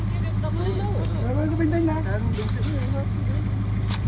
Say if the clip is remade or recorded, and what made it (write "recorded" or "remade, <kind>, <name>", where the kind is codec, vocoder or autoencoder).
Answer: recorded